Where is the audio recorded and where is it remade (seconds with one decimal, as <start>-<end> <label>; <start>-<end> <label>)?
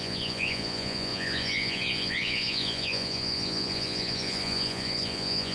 0.0-5.5 remade